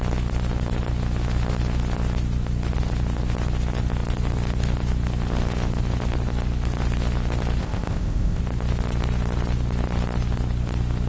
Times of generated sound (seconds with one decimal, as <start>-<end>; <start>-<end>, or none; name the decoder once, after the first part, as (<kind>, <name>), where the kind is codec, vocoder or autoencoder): 7.6-8.4 (codec, ZipCodec)